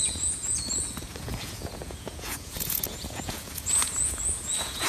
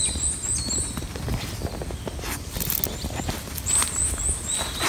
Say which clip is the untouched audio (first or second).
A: second